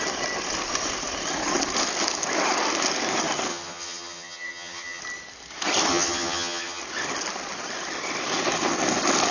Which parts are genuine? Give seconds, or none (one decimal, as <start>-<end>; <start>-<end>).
0.0-3.5; 5.0-5.9; 6.8-9.3